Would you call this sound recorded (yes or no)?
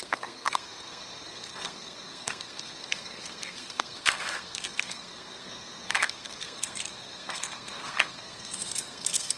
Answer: no